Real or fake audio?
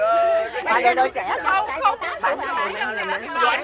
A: fake